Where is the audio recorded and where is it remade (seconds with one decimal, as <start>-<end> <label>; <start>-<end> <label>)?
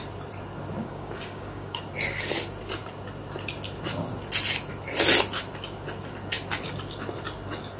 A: 0.0-0.8 recorded; 0.8-1.8 remade; 1.8-7.8 recorded